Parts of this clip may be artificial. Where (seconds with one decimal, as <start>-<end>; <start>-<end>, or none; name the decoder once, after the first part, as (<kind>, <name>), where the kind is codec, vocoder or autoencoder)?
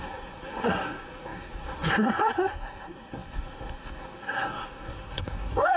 0.0-5.8 (codec, SNAC)